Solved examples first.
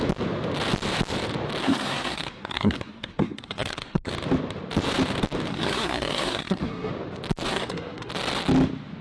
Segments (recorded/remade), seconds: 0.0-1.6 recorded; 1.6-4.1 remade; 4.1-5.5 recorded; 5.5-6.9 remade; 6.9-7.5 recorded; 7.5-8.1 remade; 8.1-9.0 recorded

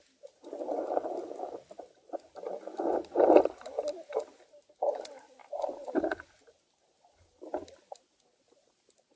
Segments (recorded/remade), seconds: 0.0-9.2 recorded

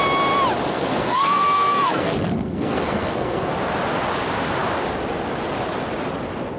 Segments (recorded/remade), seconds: 0.0-0.7 recorded; 0.7-3.5 remade; 3.5-6.6 recorded

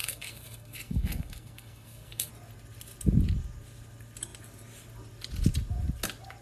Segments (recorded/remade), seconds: 0.0-2.3 remade; 2.3-6.4 recorded

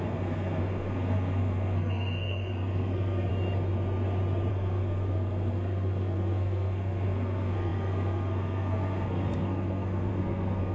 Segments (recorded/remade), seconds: 0.0-3.3 remade; 3.3-4.5 recorded; 4.5-10.7 remade

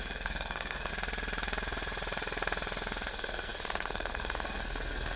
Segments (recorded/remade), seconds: 0.0-0.9 remade; 0.9-3.1 recorded; 3.1-5.2 remade